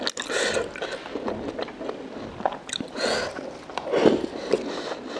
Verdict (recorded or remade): recorded